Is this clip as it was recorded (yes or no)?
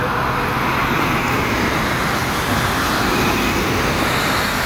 yes